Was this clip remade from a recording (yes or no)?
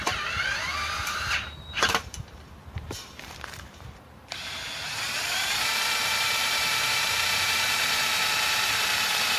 yes